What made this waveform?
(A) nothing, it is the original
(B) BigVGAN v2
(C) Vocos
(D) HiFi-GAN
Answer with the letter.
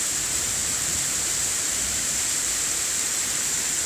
B